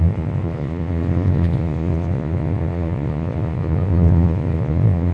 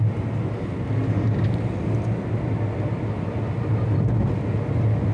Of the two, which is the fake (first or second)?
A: first